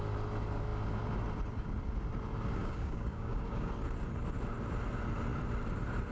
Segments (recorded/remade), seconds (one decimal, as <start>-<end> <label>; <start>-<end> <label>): 0.0-2.6 recorded; 2.6-3.7 remade; 3.7-6.1 recorded